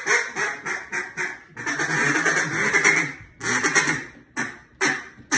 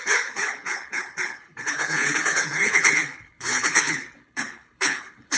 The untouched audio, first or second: first